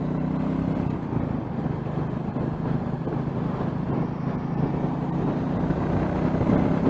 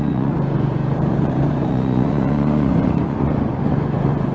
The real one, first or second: first